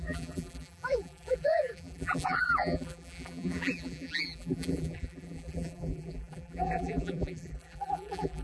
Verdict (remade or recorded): remade